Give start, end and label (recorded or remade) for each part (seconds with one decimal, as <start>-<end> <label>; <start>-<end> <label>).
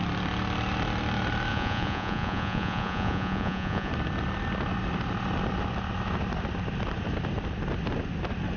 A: 0.0-1.5 recorded; 1.5-3.9 remade; 3.9-8.6 recorded